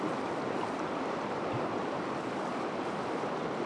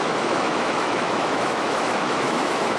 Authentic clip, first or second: first